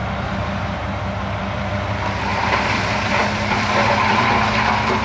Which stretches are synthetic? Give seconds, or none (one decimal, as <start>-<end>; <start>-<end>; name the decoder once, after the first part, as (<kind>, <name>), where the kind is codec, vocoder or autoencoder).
0.0-1.7 (vocoder, BigVGAN v2); 2.3-4.2